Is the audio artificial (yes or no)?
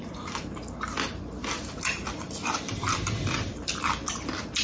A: yes